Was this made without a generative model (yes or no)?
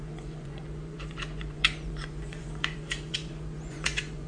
no